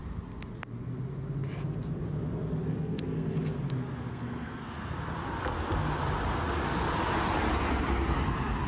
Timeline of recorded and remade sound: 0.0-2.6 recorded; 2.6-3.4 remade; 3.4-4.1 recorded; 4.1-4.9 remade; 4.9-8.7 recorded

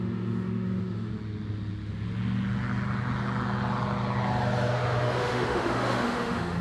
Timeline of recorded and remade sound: 0.0-1.1 remade; 1.1-4.7 recorded; 4.7-6.6 remade

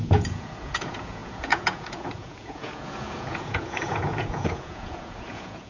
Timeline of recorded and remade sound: 0.0-5.7 remade

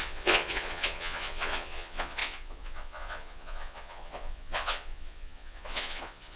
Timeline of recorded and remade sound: 0.0-6.4 remade

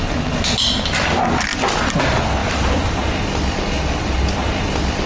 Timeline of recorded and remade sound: 0.0-5.1 recorded